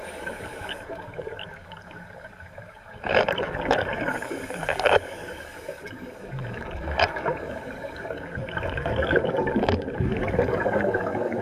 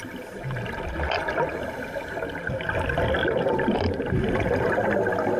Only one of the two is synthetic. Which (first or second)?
first